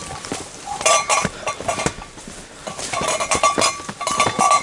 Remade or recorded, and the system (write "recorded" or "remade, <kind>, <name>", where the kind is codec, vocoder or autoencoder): remade, vocoder, BigVGAN v2